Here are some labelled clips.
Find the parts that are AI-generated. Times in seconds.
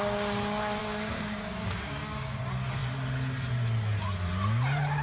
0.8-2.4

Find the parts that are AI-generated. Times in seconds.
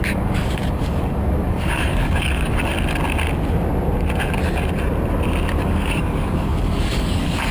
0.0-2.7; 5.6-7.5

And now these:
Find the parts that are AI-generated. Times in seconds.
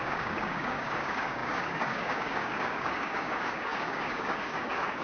0.0-5.0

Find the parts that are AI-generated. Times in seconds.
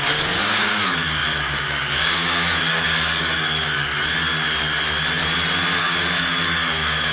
0.0-3.9; 5.8-7.1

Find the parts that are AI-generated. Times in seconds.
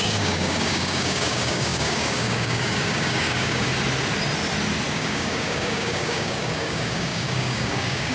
0.0-3.7; 4.9-8.1